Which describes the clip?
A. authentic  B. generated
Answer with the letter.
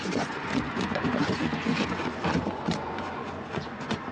B